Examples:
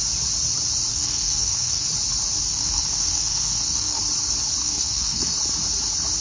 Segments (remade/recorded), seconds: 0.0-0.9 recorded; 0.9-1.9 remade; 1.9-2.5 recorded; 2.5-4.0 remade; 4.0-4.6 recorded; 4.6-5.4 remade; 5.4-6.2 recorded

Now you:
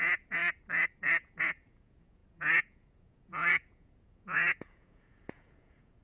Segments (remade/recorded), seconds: 0.0-0.4 remade; 0.4-0.9 recorded; 0.9-6.0 remade

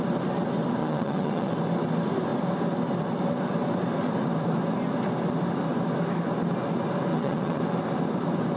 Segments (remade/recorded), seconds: 0.0-0.8 recorded; 0.8-1.5 remade; 1.5-7.1 recorded; 7.1-7.6 remade; 7.6-8.6 recorded

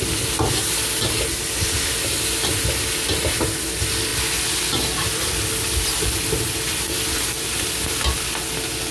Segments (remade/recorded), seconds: 0.0-8.9 recorded